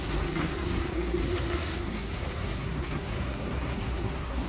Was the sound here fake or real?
fake